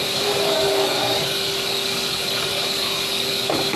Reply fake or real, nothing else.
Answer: fake